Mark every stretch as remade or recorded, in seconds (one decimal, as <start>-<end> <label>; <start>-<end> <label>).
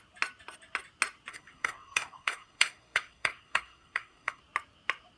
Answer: 0.0-1.3 recorded; 1.3-4.4 remade; 4.4-5.2 recorded